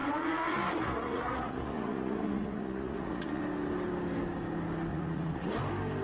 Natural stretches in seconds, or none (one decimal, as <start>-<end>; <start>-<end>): 3.4-4.9; 5.6-6.0